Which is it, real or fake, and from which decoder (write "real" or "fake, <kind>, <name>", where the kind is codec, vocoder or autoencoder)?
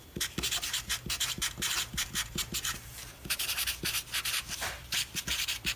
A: fake, vocoder, BigVGAN v2